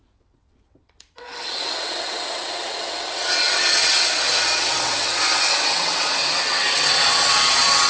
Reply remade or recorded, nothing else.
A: remade